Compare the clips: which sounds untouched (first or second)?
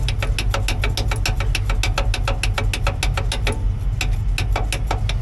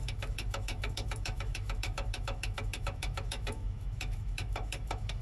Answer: first